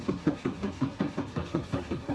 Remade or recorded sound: remade